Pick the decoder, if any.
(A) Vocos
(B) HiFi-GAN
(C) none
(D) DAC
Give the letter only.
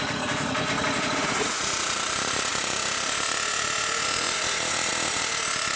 A